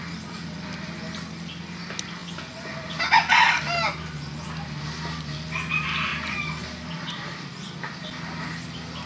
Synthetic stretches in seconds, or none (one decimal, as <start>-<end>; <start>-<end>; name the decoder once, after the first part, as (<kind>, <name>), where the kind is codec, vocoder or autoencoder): none